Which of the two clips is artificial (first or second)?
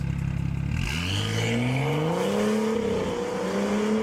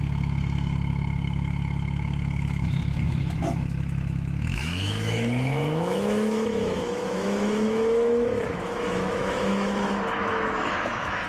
second